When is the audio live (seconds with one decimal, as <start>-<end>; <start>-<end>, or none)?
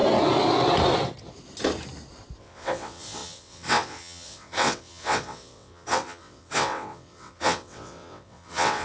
0.0-2.4